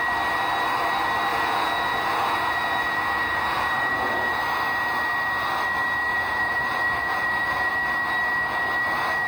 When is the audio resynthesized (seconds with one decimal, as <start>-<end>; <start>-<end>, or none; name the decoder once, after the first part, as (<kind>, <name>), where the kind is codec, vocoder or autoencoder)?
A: 1.3-4.4 (vocoder, Vocos); 6.1-7.7